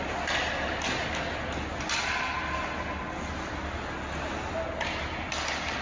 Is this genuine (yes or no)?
yes